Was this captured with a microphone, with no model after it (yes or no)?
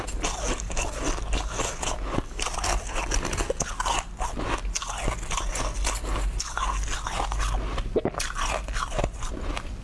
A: yes